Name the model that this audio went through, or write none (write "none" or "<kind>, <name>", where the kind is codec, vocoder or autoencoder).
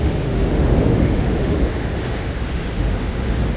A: autoencoder, DAC-VAE